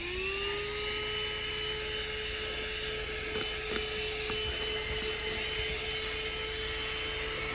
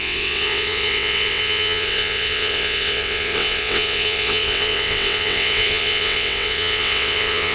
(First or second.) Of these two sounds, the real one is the first